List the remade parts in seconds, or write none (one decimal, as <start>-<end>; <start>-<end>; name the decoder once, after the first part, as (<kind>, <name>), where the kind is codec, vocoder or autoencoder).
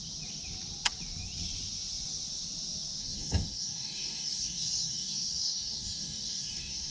3.0-6.9 (codec, DAC)